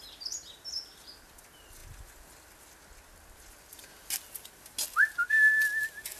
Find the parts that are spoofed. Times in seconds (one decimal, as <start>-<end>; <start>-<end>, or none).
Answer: none